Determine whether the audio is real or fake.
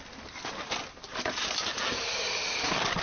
real